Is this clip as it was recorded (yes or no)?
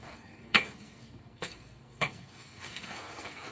no